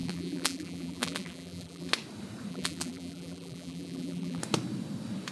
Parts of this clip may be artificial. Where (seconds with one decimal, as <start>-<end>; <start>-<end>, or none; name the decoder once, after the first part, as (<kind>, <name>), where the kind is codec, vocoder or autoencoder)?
0.0-1.9 (vocoder, BigVGAN v2); 2.5-4.4